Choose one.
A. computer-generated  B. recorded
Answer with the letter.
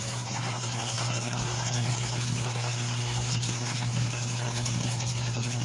A